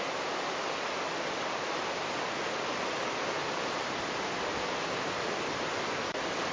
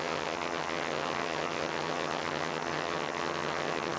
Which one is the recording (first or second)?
first